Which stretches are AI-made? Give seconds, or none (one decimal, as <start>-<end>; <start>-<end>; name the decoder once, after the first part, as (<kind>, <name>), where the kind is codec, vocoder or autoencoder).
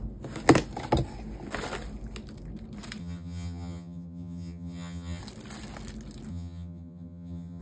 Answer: 3.0-5.2 (vocoder, HiFi-GAN); 6.3-7.6